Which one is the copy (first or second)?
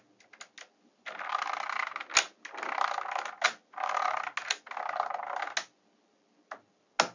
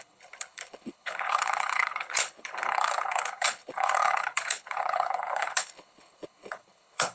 second